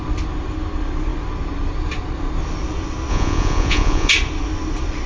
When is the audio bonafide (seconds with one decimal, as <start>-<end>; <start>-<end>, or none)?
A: 0.0-3.1; 4.1-5.1